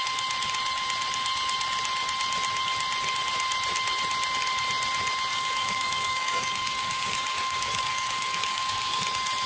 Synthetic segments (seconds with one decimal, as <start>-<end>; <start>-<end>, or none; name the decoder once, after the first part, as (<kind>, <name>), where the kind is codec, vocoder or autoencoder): 5.3-9.0 (codec, DAC)